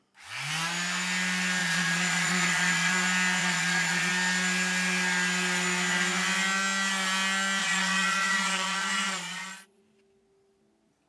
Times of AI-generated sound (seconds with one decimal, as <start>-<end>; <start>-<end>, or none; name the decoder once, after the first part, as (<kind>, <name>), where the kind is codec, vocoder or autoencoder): 1.6-2.9 (vocoder, Vocos); 3.4-4.1; 7.6-9.8